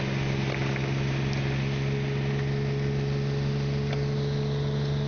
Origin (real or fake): real